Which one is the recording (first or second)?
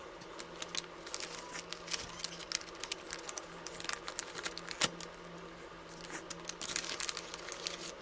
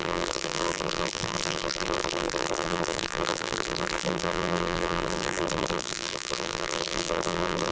first